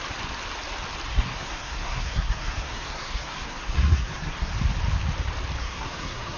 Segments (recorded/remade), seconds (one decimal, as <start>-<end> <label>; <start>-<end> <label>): 0.0-1.1 recorded; 1.1-4.5 remade; 4.5-5.6 recorded; 5.6-6.4 remade